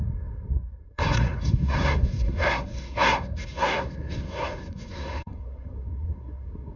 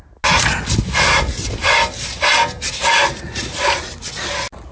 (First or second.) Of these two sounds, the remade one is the first